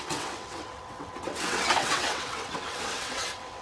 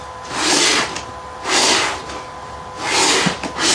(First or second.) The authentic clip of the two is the second